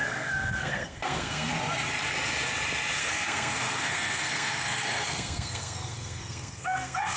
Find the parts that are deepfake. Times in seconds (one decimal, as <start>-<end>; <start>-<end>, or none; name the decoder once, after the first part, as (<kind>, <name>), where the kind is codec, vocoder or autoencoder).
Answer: 0.0-1.5 (codec, SNAC); 3.0-7.2